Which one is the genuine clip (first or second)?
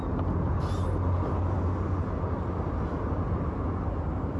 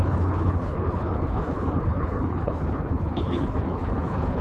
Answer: first